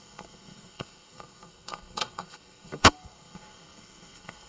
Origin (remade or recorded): remade